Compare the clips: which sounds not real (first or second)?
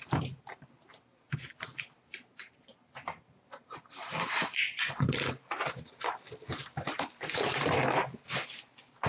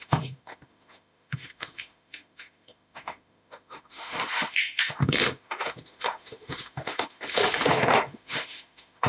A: second